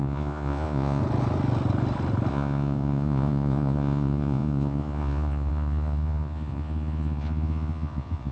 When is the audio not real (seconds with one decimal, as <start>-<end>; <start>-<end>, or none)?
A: 0.0-1.0; 2.3-8.3